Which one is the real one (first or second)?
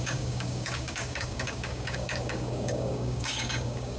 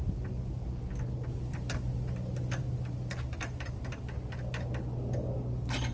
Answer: second